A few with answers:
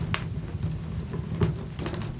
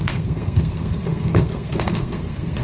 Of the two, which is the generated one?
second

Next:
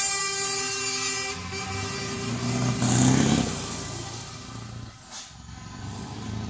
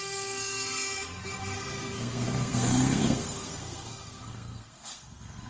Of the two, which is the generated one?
second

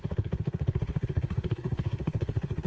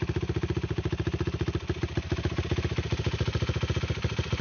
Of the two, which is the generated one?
first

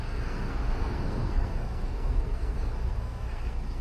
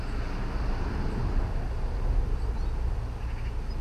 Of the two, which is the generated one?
first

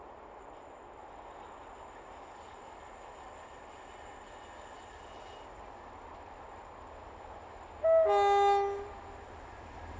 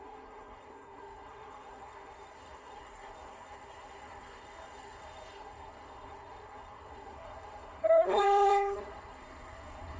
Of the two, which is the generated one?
second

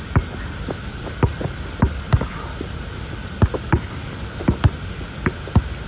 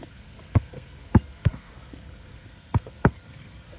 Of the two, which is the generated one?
second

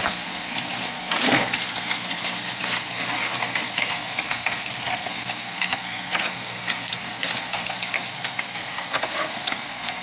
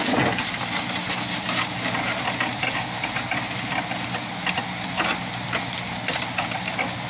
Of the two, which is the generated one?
first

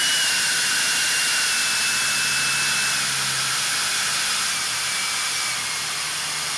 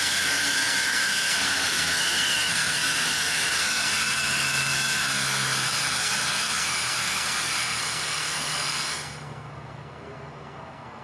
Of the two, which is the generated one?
second